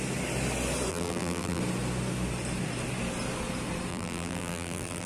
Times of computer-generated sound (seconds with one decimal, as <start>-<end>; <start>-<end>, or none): 0.9-1.6; 3.9-5.1